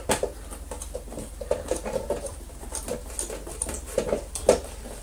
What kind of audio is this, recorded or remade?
remade